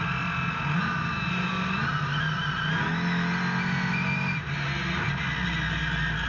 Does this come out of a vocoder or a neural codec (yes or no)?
no